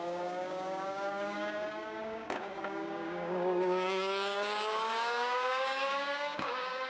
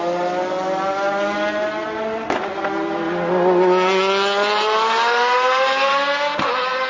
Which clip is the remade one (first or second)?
first